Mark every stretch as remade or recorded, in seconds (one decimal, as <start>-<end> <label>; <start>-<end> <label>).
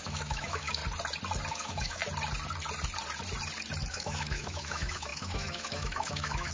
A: 0.0-0.8 remade; 0.8-1.5 recorded; 1.5-2.0 remade; 2.0-3.9 recorded; 3.9-6.5 remade